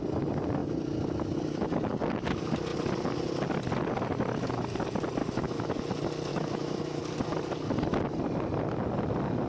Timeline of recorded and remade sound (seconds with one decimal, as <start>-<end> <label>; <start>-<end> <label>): 0.0-5.2 recorded; 5.2-5.8 remade; 5.8-6.3 recorded; 6.3-7.0 remade; 7.0-9.5 recorded